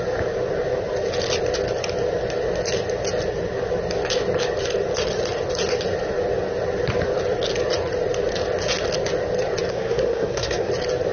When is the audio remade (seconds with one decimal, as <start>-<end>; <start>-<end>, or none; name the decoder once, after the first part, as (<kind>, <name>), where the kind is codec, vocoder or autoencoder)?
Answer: 9.7-10.7 (codec, SNAC)